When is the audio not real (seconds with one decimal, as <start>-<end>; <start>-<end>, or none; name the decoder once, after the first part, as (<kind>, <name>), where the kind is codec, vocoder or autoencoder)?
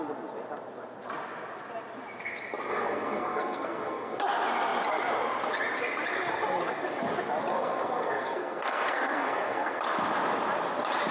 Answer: 2.7-4.2 (codec, SNAC); 7.5-9.8